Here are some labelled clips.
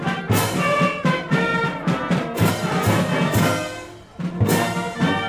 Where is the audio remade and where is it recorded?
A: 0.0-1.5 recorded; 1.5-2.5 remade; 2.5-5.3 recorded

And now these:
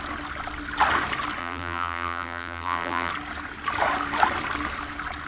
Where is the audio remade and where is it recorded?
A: 0.0-1.4 recorded; 1.4-3.1 remade; 3.1-5.3 recorded

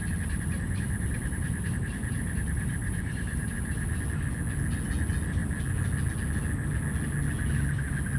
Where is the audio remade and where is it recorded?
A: 0.0-4.0 remade; 4.0-8.2 recorded